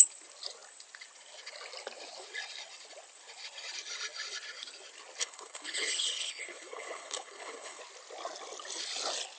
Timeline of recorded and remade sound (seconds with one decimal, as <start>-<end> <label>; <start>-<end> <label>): 0.0-5.2 recorded; 5.2-7.8 remade; 7.8-9.4 recorded